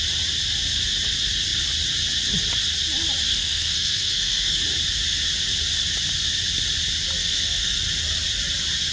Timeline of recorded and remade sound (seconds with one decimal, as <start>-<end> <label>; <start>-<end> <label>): 0.0-3.3 recorded; 3.3-4.6 remade; 4.6-7.2 recorded; 7.2-7.8 remade; 7.8-8.9 recorded

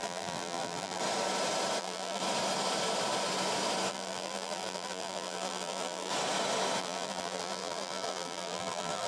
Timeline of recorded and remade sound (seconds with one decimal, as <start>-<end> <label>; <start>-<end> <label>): 0.0-1.0 remade; 1.0-1.8 recorded; 1.8-2.2 remade; 2.2-3.9 recorded; 3.9-6.1 remade; 6.1-6.8 recorded; 6.8-9.1 remade

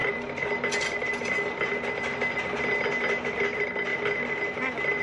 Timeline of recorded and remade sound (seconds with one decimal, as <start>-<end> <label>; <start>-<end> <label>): 0.0-5.0 recorded

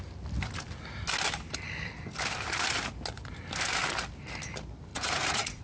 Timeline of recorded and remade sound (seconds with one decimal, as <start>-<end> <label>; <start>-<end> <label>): 0.0-4.9 recorded; 4.9-5.6 remade

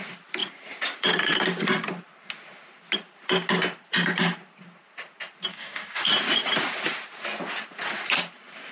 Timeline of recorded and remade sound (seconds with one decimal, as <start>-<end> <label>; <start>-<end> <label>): 0.0-5.5 recorded; 5.5-6.1 remade; 6.1-8.7 recorded